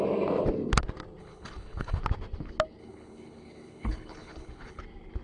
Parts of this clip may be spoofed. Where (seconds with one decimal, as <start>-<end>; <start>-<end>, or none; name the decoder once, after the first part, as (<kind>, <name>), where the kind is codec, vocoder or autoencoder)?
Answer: 1.2-2.0 (codec, HILCodec); 2.8-4.8